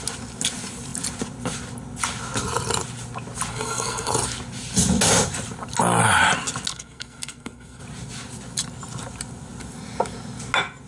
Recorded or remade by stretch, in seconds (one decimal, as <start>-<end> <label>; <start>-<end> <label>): 0.0-3.5 recorded; 3.5-4.1 remade; 4.1-6.7 recorded; 6.7-7.8 remade; 7.8-10.9 recorded